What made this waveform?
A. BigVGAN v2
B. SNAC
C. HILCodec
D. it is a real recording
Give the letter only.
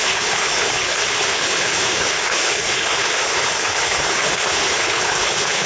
C